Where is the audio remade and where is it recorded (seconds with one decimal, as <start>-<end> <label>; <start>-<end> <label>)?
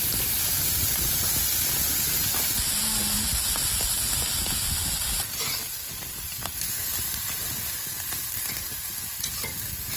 0.0-10.0 recorded